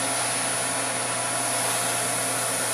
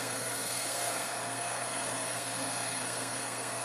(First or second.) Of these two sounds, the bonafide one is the first